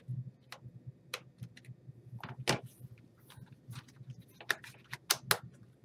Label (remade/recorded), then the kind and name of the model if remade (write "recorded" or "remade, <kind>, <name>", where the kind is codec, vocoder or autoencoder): recorded